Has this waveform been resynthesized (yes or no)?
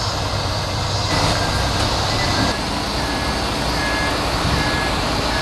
no